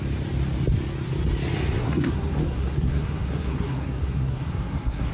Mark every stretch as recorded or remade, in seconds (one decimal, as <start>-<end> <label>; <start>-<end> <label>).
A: 0.0-1.8 recorded; 1.8-5.1 remade